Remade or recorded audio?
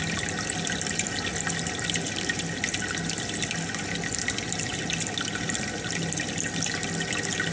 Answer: recorded